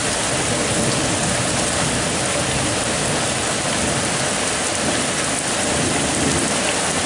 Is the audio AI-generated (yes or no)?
no